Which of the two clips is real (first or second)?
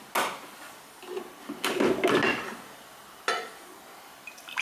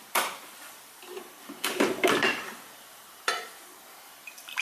first